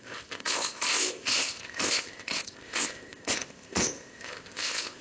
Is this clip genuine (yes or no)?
no